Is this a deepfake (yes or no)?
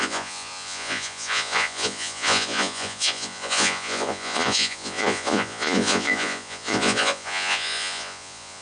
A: yes